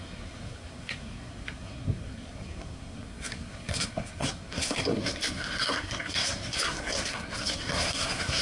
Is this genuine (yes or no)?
no